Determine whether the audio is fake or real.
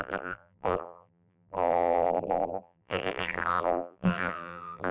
fake